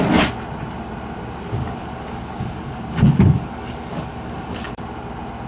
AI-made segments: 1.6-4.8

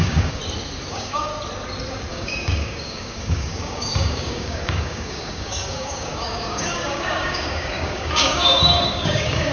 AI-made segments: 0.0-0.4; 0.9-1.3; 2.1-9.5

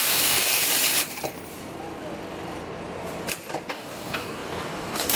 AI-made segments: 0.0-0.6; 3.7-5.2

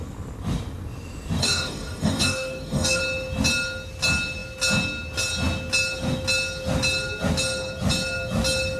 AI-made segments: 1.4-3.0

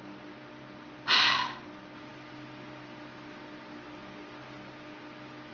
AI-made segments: none

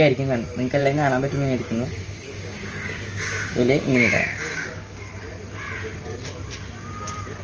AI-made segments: 0.8-5.0